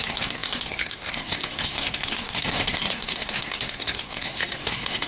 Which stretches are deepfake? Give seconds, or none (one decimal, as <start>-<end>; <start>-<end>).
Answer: 0.0-5.1